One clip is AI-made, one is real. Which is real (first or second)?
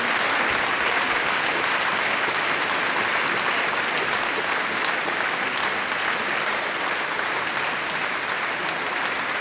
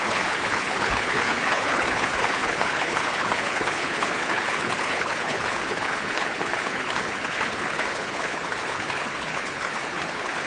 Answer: first